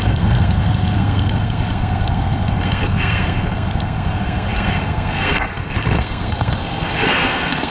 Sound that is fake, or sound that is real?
fake